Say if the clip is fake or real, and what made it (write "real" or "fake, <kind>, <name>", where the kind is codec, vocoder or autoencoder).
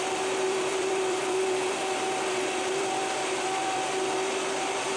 fake, vocoder, BigVGAN v2